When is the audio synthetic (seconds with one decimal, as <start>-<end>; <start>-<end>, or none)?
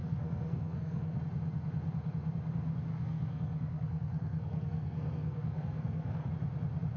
0.0-1.2; 2.9-6.3